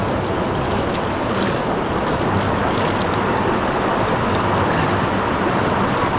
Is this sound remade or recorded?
recorded